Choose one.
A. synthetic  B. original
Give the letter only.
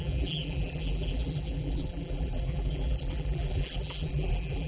A